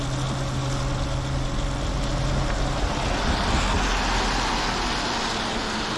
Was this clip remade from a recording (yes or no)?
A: no